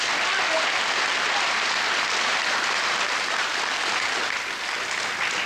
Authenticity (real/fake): real